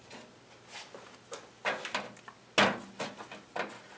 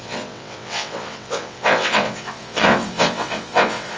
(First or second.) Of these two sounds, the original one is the first